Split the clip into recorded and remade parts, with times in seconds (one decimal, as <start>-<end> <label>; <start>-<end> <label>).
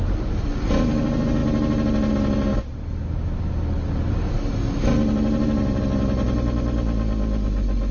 0.0-7.9 recorded